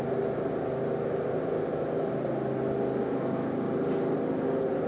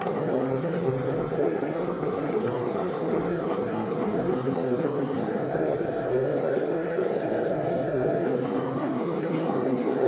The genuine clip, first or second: first